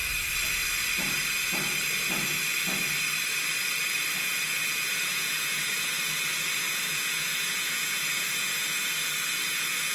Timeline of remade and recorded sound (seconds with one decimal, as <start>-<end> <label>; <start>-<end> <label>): 0.0-4.2 recorded; 4.2-9.9 remade